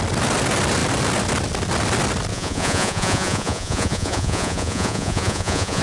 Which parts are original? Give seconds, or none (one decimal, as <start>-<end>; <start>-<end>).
0.0-2.3